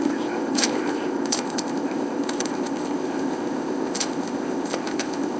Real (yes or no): no